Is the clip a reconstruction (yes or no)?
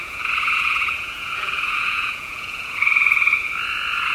yes